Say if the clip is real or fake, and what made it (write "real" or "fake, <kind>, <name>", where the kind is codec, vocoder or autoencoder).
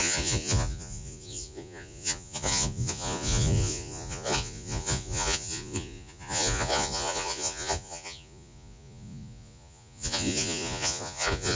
fake, vocoder, Vocos